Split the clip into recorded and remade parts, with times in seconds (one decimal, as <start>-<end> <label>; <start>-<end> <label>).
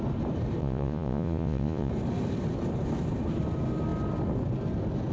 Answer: 0.0-0.6 recorded; 0.6-1.9 remade; 1.9-5.1 recorded